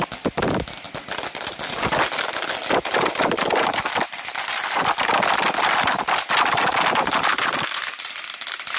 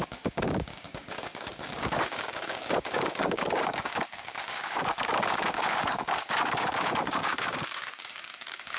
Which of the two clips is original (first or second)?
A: first